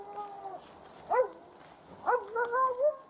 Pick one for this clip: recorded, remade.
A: recorded